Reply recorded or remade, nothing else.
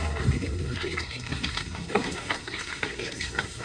remade